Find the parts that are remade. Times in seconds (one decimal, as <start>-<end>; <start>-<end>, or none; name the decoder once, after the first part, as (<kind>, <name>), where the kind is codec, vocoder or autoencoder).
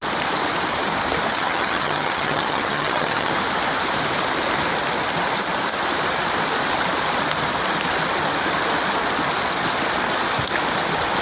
1.3-3.3 (vocoder, HiFi-GAN)